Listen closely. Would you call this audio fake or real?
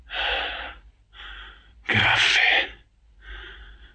real